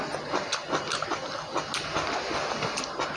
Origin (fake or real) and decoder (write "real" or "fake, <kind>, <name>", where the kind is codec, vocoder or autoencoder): real